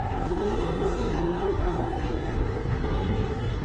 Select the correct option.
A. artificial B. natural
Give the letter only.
A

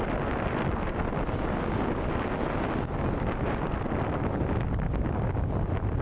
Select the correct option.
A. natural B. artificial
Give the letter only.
A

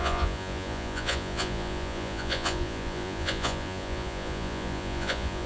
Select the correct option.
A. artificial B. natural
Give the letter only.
A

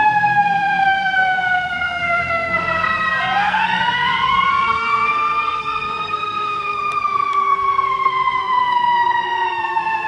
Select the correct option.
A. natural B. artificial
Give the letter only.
B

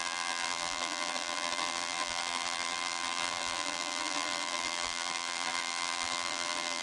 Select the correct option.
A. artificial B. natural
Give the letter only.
A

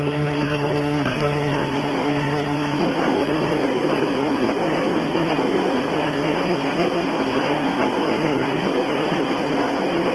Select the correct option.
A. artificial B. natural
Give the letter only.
A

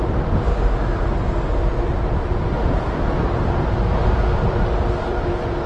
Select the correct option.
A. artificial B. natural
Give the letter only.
B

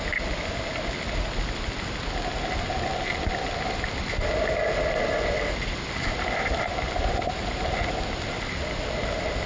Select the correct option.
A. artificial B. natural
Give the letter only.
B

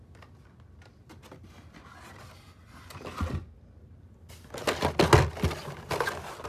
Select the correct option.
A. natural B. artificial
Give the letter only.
A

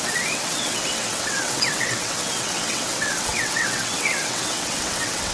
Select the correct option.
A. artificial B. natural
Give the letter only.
A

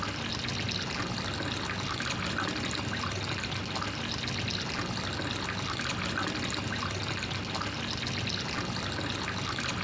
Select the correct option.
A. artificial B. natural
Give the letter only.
B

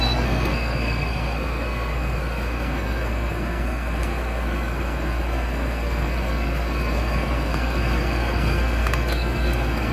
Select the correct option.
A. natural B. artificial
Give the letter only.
B